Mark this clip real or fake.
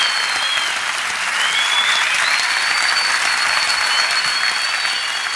real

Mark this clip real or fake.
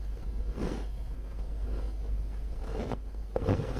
fake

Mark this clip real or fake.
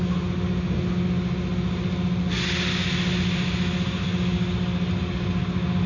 real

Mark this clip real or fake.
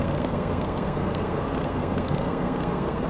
fake